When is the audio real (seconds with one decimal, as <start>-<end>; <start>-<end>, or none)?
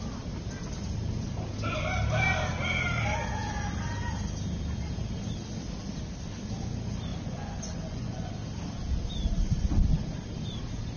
0.0-7.1; 8.3-11.0